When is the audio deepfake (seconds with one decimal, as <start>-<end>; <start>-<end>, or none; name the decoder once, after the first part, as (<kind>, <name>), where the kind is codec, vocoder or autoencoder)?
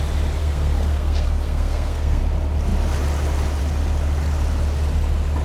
0.4-2.2 (codec, SNAC)